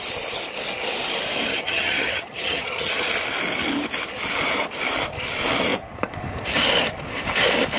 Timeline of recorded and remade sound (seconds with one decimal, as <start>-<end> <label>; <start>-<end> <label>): 0.0-1.5 recorded; 1.5-2.9 remade; 2.9-7.8 recorded